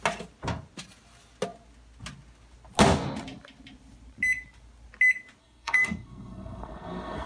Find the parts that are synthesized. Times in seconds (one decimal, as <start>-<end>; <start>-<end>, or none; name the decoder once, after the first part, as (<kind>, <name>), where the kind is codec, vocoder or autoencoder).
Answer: 5.4-7.3 (codec, SNAC)